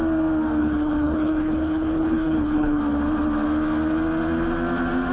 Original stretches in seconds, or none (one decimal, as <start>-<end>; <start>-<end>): 0.0-0.6; 2.8-5.1